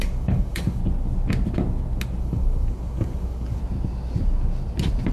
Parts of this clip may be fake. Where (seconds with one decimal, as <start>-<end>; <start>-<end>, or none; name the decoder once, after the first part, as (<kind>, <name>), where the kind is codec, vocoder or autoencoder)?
0.0-0.8 (codec, DAC); 2.2-3.6